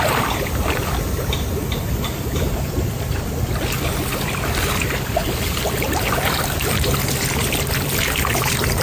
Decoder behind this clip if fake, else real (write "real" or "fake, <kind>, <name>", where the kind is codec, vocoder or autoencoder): fake, vocoder, BigVGAN v2